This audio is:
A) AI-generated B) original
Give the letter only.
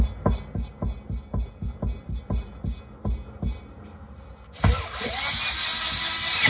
B